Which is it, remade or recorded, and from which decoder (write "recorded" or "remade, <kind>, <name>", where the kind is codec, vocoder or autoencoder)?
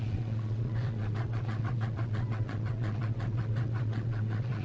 remade, vocoder, WaveNeXt